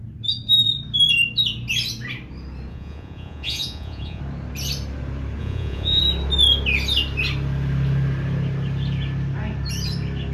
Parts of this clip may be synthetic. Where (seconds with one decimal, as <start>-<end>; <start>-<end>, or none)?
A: 2.7-4.2; 5.4-6.0

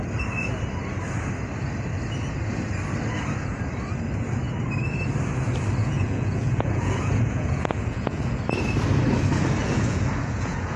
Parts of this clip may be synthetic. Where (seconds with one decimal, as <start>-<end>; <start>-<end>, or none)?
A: 5.8-8.4; 9.6-10.8

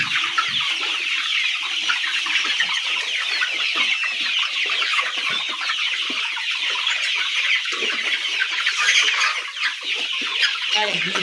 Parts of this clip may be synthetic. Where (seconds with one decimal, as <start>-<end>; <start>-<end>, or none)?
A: 4.9-5.5; 8.4-9.3; 10.3-11.2

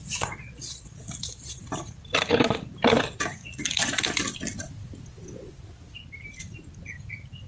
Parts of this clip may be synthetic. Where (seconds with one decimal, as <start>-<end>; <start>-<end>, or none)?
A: 0.0-1.6; 3.4-4.0

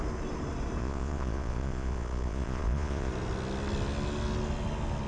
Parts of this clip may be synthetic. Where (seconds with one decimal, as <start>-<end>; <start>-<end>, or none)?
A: 0.8-3.1

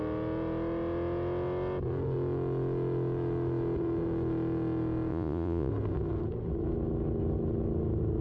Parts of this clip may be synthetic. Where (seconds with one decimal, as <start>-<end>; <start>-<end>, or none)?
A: 5.1-5.7

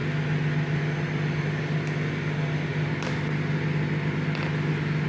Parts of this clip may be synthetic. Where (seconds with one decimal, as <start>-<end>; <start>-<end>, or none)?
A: none